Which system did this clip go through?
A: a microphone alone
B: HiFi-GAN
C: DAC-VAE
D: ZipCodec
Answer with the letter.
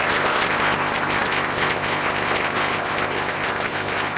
D